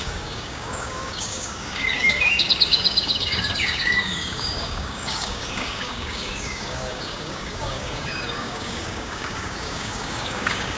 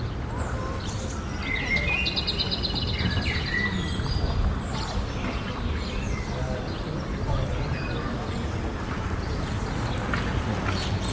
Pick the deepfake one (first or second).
first